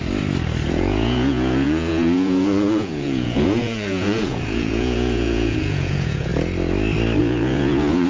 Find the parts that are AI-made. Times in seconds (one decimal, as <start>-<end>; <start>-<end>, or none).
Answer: 0.7-6.3; 7.2-8.1